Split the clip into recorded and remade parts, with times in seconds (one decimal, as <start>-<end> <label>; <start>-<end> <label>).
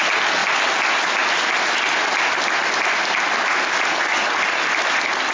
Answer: 0.0-5.3 recorded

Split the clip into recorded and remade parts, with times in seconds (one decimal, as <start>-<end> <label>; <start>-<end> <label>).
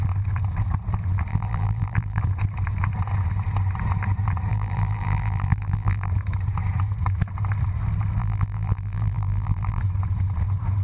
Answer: 0.0-1.3 recorded; 1.3-2.2 remade; 2.2-4.5 recorded; 4.5-6.1 remade; 6.1-8.2 recorded; 8.2-9.8 remade; 9.8-10.8 recorded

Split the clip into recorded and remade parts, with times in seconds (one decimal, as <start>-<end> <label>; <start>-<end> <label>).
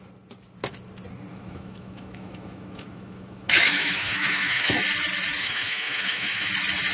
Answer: 0.0-1.3 recorded; 1.3-4.7 remade; 4.7-5.4 recorded; 5.4-6.5 remade; 6.5-6.9 recorded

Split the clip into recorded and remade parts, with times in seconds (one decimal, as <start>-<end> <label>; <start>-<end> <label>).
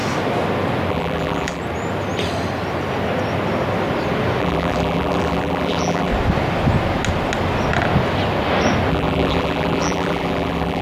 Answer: 0.0-0.9 recorded; 0.9-1.6 remade; 1.6-4.4 recorded; 4.4-6.1 remade; 6.1-8.9 recorded; 8.9-10.8 remade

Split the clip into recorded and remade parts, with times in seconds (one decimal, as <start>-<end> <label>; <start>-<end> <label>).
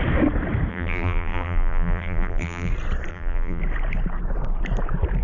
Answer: 0.0-0.7 recorded; 0.7-2.7 remade; 2.7-3.1 recorded; 3.1-3.6 remade; 3.6-5.2 recorded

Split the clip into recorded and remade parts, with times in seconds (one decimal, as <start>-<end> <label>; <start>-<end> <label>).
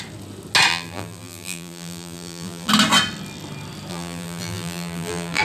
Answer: 0.0-0.7 recorded; 0.7-2.7 remade; 2.7-3.9 recorded; 3.9-5.4 remade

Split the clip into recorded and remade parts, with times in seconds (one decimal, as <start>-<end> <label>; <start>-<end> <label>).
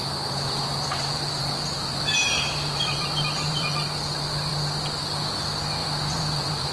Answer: 0.0-3.7 remade; 3.7-5.8 recorded; 5.8-6.7 remade